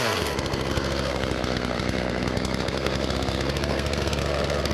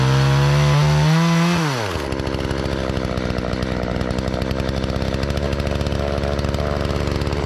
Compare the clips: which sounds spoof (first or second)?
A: first